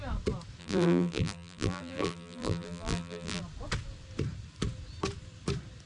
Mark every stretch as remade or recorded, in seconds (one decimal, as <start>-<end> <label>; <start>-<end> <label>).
0.0-0.6 recorded; 0.6-3.4 remade; 3.4-5.9 recorded